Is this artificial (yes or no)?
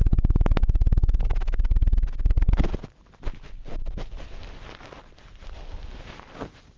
no